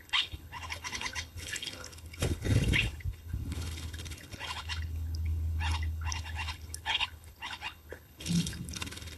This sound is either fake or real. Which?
fake